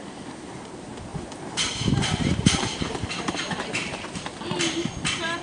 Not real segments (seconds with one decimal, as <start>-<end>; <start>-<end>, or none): 1.1-4.3